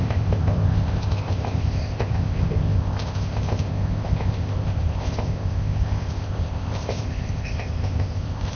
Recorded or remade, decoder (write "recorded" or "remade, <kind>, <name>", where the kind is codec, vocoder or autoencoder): remade, codec, ZipCodec